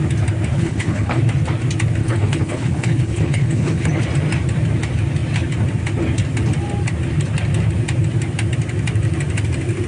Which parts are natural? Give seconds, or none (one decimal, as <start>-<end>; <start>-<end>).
0.0-0.5; 1.2-2.0; 4.0-9.9